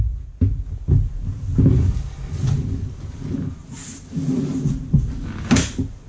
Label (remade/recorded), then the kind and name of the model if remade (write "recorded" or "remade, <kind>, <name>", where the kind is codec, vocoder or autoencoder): recorded